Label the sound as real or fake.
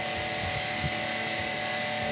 real